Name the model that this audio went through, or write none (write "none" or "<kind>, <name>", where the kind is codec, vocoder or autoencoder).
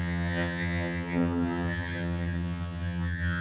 vocoder, HiFi-GAN